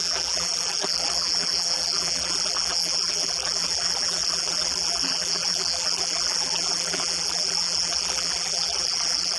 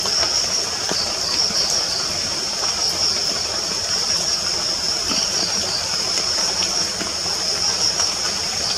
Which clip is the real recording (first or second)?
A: second